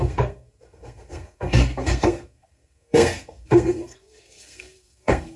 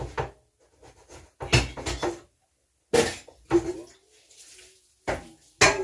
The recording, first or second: second